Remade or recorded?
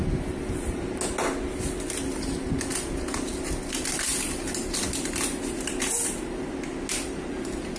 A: recorded